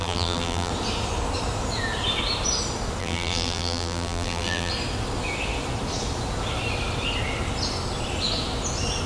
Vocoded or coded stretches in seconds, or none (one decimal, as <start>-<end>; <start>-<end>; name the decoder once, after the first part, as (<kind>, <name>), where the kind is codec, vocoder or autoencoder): 0.0-0.7 (vocoder, BigVGAN v2); 3.0-4.7